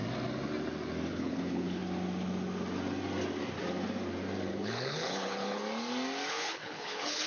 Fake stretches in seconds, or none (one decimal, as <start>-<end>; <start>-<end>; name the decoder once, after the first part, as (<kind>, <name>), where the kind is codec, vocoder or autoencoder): 1.1-1.8 (codec, HILCodec); 4.5-5.6; 6.3-7.3